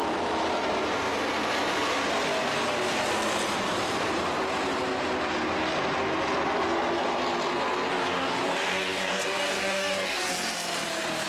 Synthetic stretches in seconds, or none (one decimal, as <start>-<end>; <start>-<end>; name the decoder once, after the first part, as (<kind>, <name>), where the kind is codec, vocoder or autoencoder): 7.9-10.3 (codec, DAC)